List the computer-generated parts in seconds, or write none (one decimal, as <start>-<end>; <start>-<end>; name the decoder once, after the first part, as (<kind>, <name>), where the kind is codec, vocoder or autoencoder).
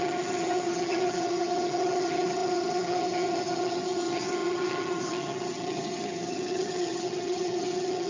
0.0-8.1 (vocoder, HiFi-GAN)